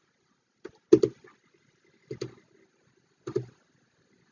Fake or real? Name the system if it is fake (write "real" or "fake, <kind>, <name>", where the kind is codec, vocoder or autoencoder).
real